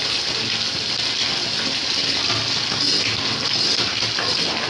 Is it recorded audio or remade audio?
recorded